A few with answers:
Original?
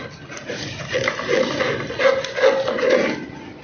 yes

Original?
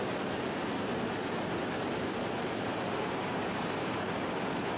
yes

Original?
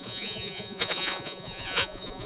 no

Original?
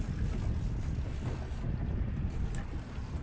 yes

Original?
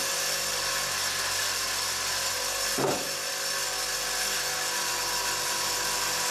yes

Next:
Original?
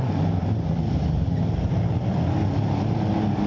yes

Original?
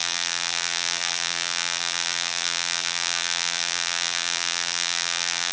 no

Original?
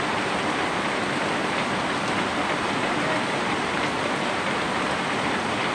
yes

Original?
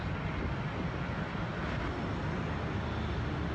yes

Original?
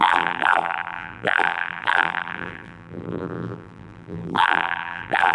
no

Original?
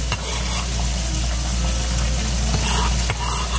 yes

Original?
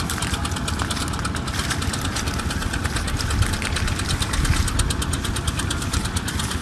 yes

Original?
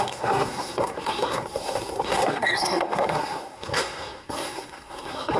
no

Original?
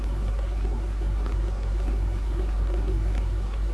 no